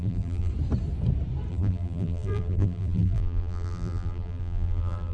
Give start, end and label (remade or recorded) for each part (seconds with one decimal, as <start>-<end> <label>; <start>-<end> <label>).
0.0-0.5 remade; 0.5-1.5 recorded; 1.5-5.1 remade